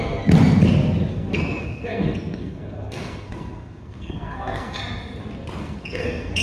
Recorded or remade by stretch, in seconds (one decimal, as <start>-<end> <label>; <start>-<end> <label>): 0.0-1.1 recorded; 1.1-4.8 remade; 4.8-5.6 recorded; 5.6-6.4 remade